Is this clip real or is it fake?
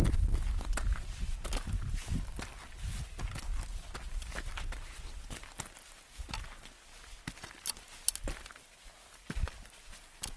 real